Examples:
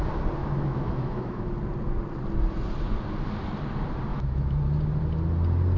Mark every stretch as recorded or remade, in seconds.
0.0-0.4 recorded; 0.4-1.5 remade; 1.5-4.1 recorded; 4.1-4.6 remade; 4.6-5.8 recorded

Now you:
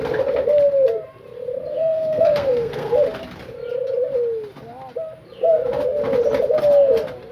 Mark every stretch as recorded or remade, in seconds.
0.0-1.7 recorded; 1.7-2.9 remade; 2.9-7.3 recorded